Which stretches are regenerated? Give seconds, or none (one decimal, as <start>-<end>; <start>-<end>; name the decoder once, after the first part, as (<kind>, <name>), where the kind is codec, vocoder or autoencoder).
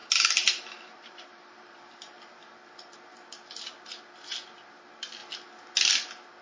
0.0-2.5 (vocoder, BigVGAN v2)